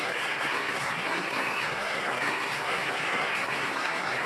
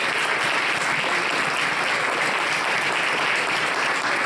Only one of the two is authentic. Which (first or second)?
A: second